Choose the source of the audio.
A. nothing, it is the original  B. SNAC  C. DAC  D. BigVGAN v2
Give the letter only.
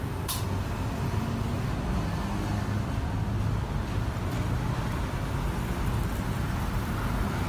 A